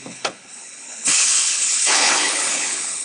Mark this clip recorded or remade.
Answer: remade